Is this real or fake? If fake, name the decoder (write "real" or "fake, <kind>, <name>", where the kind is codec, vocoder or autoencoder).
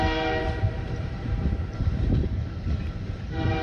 fake, vocoder, BigVGAN v2